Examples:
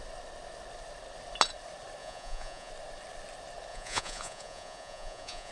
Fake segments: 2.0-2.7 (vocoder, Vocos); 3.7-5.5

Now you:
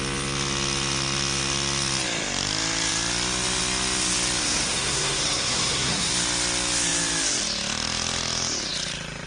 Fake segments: 4.4-6.1 (codec, SNAC)

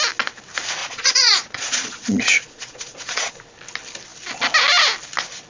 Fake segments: 0.8-3.3 (vocoder, Vocos)

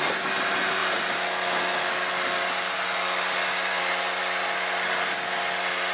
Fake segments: none

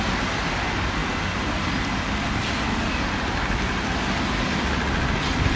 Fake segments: none

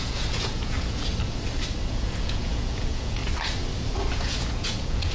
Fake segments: 0.0-1.1 (vocoder, Vocos); 1.9-3.2; 4.1-5.1